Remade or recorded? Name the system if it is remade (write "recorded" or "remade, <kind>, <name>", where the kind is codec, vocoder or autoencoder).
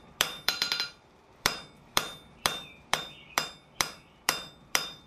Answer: remade, vocoder, BigVGAN v2